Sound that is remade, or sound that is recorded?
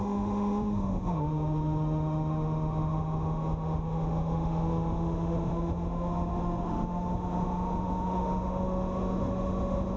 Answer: remade